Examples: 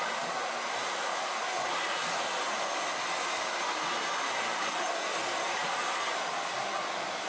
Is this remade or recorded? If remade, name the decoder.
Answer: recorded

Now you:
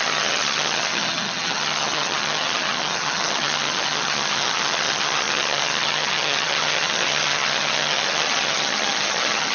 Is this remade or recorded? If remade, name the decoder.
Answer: remade, vocoder, HiFi-GAN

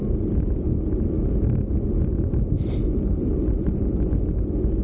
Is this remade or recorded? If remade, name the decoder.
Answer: recorded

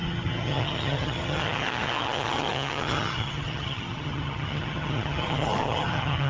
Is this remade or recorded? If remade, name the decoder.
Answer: remade, vocoder, HiFi-GAN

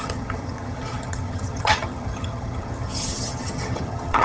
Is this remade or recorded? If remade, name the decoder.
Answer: remade, vocoder, HiFi-GAN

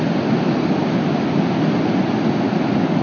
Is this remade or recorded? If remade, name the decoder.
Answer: recorded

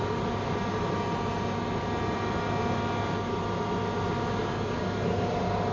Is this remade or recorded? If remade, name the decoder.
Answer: recorded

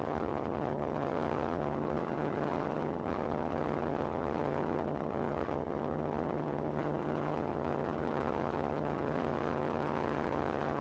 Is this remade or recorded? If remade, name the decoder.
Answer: remade, vocoder, HiFi-GAN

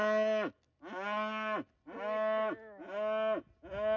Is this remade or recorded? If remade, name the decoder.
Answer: recorded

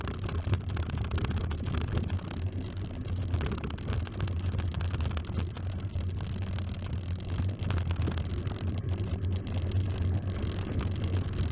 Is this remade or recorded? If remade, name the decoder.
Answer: recorded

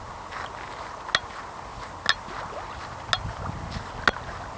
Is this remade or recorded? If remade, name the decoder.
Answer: recorded